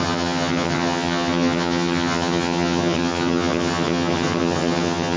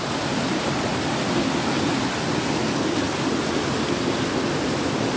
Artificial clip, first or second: first